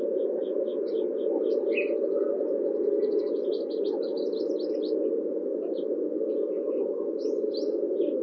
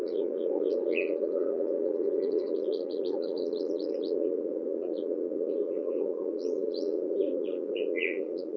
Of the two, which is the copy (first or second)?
second